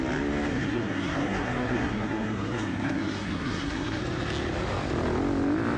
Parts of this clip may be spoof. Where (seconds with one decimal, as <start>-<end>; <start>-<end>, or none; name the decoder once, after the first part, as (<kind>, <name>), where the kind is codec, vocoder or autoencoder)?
0.5-4.0 (codec, SNAC)